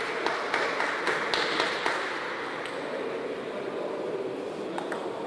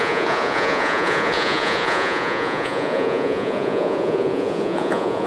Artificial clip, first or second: second